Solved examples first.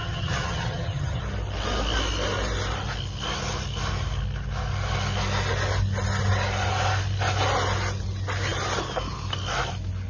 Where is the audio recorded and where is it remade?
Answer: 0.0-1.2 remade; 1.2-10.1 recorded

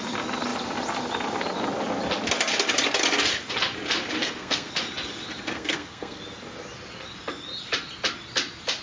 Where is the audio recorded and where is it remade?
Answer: 0.0-4.2 recorded; 4.2-4.7 remade; 4.7-5.5 recorded; 5.5-6.2 remade; 6.2-8.8 recorded

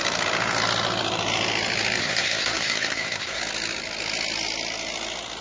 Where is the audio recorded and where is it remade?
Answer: 0.0-2.0 recorded; 2.0-3.4 remade; 3.4-5.4 recorded